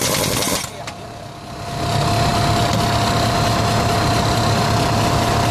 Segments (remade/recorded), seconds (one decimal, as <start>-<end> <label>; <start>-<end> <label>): 0.0-5.5 recorded